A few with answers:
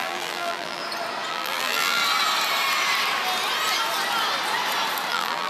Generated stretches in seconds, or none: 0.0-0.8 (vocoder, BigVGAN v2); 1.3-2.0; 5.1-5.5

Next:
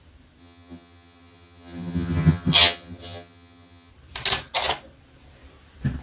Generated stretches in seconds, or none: 0.4-3.9 (vocoder, HiFi-GAN)

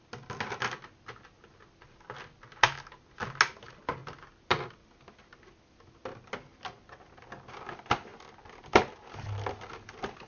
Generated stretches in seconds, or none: 8.1-9.1 (vocoder, BigVGAN v2)